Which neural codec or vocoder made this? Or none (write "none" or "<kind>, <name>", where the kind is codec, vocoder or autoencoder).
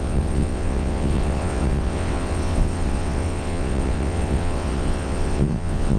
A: vocoder, WaveNeXt